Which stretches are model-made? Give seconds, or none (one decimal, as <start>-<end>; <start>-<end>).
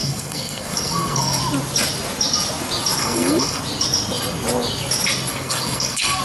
0.0-1.4; 3.0-3.6; 5.3-6.2